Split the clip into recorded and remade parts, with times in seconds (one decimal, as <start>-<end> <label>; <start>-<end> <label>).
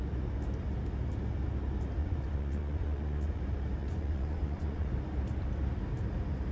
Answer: 0.0-2.0 recorded; 2.0-3.4 remade; 3.4-3.8 recorded; 3.8-4.9 remade; 4.9-6.5 recorded